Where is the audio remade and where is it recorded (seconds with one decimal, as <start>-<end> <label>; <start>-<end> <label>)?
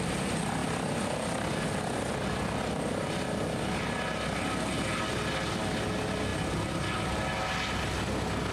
0.0-8.5 recorded